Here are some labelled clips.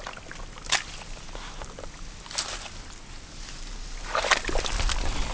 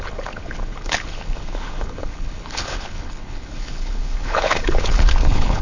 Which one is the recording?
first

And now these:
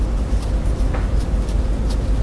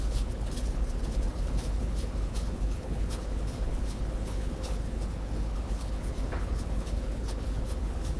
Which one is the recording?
first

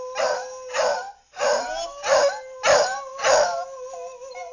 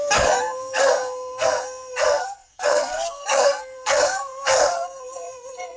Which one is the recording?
first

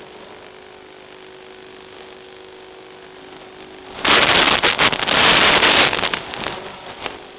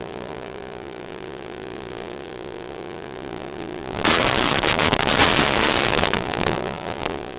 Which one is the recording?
first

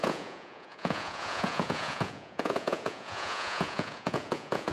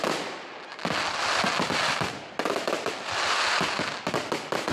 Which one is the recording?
second